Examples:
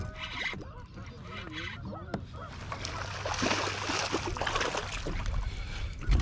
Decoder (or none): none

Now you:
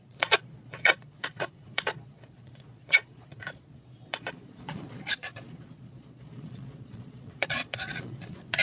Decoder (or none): vocoder, Vocos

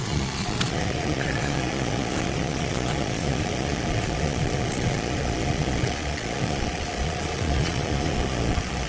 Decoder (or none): vocoder, Vocos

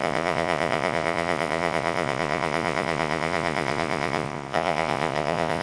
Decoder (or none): vocoder, Vocos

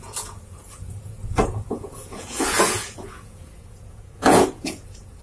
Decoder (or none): vocoder, Vocos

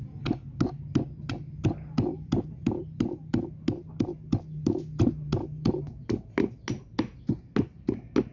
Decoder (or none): none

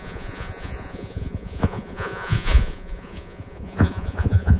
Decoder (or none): vocoder, Vocos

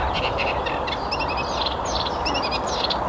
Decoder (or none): none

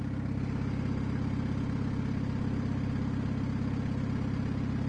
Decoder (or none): none